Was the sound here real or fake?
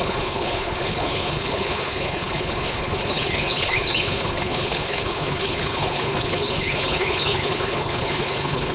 fake